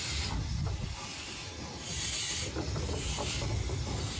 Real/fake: real